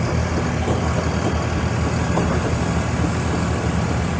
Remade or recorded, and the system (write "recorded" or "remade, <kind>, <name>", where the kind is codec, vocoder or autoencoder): recorded